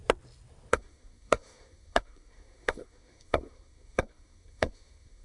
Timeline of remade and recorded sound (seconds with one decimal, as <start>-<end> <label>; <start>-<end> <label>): 0.0-0.7 recorded; 0.7-5.2 remade